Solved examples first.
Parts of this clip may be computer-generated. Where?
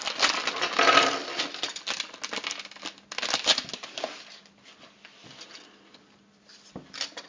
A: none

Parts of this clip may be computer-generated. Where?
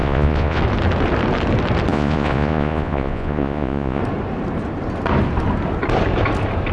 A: 0.0-0.6 (vocoder, Vocos); 1.9-4.0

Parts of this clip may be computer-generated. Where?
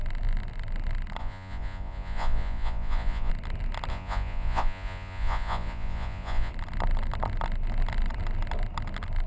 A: 1.2-3.3 (vocoder, Vocos); 3.9-6.5